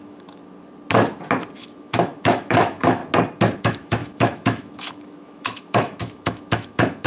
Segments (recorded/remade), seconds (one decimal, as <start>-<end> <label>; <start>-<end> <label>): 0.0-0.4 remade; 0.4-1.6 recorded; 1.6-3.0 remade; 3.0-3.6 recorded; 3.6-7.1 remade